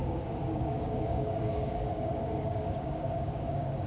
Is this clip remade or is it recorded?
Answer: remade